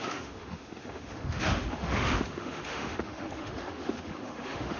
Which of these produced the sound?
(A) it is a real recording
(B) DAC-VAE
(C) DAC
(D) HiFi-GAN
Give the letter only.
B